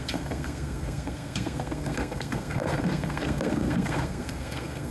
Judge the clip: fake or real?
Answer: fake